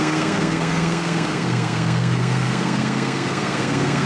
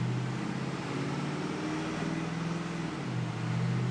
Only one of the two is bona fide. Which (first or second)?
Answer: second